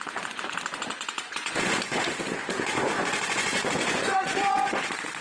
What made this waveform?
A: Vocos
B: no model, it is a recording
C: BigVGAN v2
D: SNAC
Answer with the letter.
A